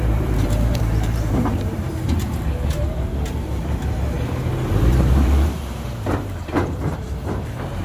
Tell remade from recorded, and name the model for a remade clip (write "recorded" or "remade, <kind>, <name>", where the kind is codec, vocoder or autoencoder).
remade, vocoder, BigVGAN v2